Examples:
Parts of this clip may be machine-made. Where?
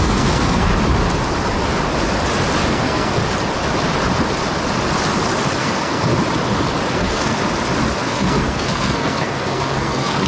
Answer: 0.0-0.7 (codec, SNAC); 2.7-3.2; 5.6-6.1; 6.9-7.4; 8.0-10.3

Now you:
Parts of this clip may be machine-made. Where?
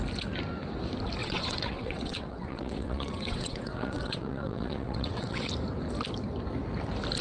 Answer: 1.2-5.5 (vocoder, WaveNeXt)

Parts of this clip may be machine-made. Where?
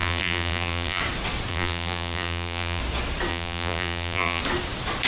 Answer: 0.0-1.0 (vocoder, BigVGAN v2); 1.5-2.8; 3.3-4.4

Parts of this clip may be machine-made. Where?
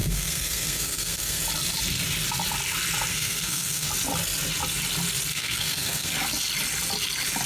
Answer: 0.0-1.4 (codec, SNAC); 3.1-3.9; 5.3-6.1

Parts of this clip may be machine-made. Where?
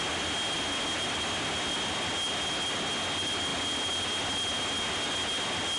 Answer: none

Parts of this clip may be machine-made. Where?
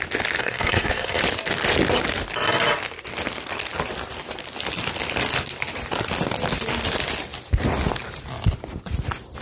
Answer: 0.4-1.2 (codec, SNAC)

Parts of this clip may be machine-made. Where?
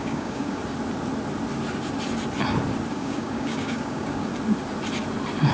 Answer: 0.0-0.6 (codec, DAC); 2.9-4.3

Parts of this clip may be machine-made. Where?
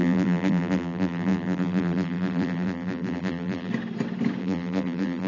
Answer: 0.0-3.7 (vocoder, BigVGAN v2); 4.4-5.3